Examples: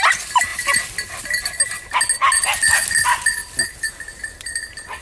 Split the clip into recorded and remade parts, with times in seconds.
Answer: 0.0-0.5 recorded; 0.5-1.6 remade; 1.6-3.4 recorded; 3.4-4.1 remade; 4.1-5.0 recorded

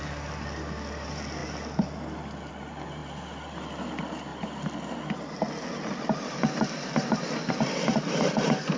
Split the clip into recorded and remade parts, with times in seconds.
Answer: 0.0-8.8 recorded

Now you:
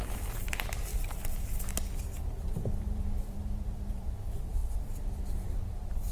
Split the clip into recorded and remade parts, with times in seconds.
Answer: 0.0-0.9 remade; 0.9-2.8 recorded; 2.8-6.1 remade

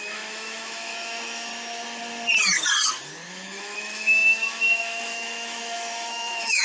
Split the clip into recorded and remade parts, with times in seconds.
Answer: 0.0-1.5 remade; 1.5-3.3 recorded; 3.3-6.6 remade